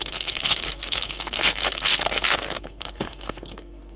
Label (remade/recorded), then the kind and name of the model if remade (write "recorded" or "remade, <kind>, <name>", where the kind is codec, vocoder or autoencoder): remade, codec, SNAC